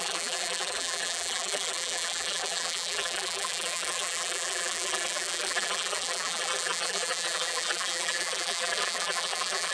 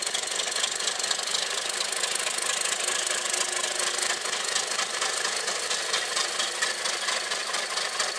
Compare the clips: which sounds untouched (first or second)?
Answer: second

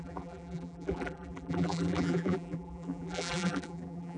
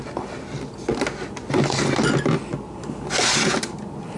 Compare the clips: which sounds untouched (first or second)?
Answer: second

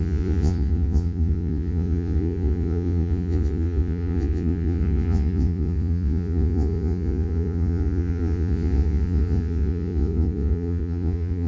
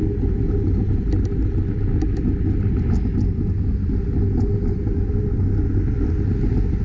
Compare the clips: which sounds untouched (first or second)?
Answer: second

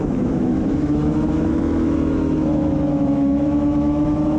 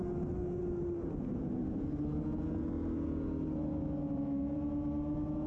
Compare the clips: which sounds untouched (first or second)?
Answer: second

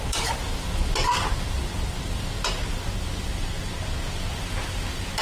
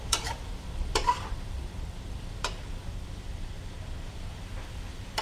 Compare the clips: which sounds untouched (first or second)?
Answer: first